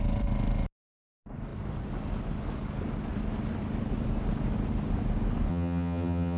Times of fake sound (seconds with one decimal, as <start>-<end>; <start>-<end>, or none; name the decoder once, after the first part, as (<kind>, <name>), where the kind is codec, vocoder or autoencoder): 5.5-6.4 (vocoder, HiFi-GAN)